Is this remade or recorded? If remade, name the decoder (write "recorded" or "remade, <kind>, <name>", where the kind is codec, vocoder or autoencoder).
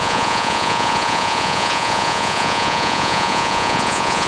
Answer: remade, vocoder, Vocos